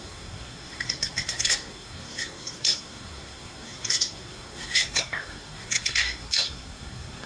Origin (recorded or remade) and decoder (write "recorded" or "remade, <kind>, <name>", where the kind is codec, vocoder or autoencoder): remade, codec, SNAC